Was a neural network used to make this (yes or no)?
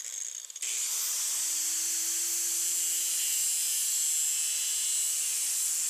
no